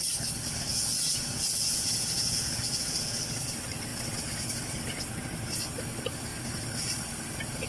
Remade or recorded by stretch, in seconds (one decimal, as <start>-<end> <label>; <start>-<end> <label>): 0.0-0.7 recorded; 0.7-3.2 remade; 3.2-7.7 recorded

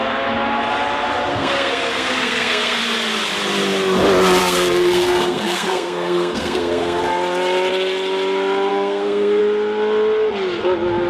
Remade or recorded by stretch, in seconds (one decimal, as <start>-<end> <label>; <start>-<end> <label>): 0.0-1.3 recorded; 1.3-2.8 remade; 2.8-4.4 recorded; 4.4-7.0 remade; 7.0-8.7 recorded; 8.7-9.4 remade; 9.4-11.1 recorded

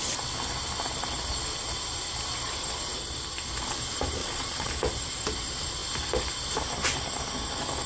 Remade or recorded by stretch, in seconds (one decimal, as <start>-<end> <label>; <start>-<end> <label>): 0.0-4.2 recorded; 4.2-4.7 remade; 4.7-7.9 recorded

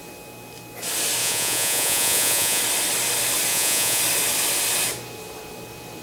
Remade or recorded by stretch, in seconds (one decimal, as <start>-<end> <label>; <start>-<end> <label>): 0.0-1.2 recorded; 1.2-2.6 remade; 2.6-3.5 recorded; 3.5-4.0 remade; 4.0-6.0 recorded

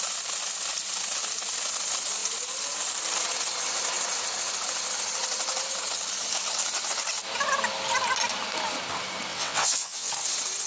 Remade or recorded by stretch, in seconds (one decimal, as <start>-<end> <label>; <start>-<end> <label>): 0.0-9.3 recorded; 9.3-10.1 remade; 10.1-10.7 recorded

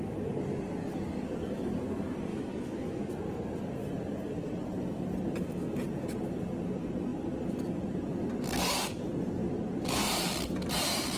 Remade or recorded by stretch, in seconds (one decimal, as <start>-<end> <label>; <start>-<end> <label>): 0.0-2.3 recorded; 2.3-3.1 remade; 3.1-11.2 recorded